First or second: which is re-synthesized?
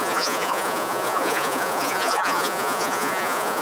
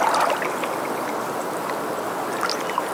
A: first